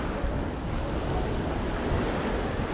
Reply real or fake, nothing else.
real